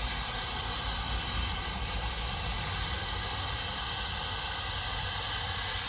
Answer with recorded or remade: recorded